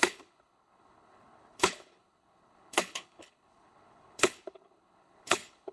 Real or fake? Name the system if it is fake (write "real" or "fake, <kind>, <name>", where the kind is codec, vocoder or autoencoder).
fake, codec, HILCodec